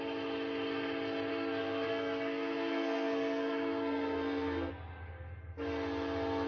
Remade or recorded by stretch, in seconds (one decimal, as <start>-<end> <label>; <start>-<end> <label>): 0.0-1.3 recorded; 1.3-4.7 remade; 4.7-6.5 recorded